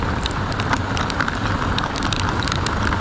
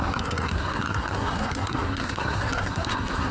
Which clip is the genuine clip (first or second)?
first